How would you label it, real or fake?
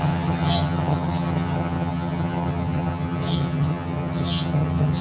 fake